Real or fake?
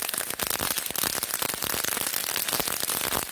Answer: real